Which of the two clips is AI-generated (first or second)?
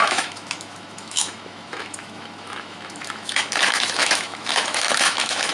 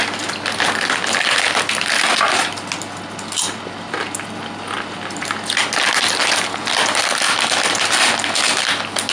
first